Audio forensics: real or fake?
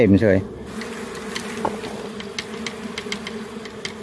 real